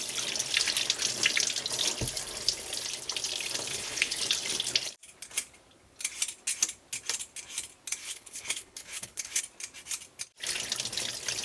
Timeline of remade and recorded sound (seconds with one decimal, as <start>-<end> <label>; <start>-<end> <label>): 0.0-3.7 recorded; 3.7-4.2 remade; 4.2-8.0 recorded; 8.0-9.4 remade; 9.4-11.4 recorded